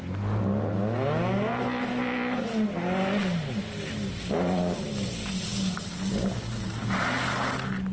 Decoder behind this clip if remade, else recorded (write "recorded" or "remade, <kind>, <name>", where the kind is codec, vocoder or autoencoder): recorded